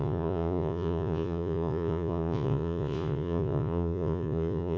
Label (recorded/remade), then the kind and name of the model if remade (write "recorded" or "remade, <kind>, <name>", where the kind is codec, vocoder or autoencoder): remade, vocoder, Vocos